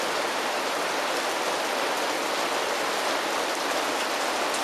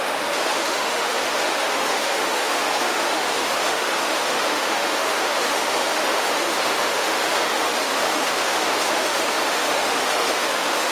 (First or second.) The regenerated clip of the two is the second